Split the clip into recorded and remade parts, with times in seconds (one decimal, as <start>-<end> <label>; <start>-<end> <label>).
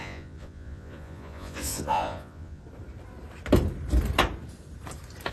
0.0-2.6 remade; 2.6-5.3 recorded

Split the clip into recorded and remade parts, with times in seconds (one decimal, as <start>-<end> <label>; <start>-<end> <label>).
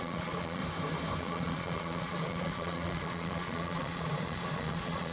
0.0-0.6 remade; 0.6-1.2 recorded; 1.2-5.1 remade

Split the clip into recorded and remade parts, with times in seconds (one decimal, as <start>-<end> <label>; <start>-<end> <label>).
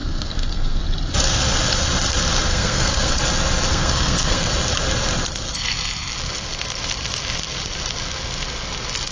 0.0-0.8 remade; 0.8-2.5 recorded; 2.5-3.1 remade; 3.1-3.7 recorded; 3.7-4.5 remade; 4.5-9.1 recorded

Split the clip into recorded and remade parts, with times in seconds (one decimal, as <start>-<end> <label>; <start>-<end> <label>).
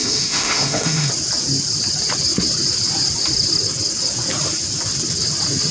0.0-1.1 remade; 1.1-5.7 recorded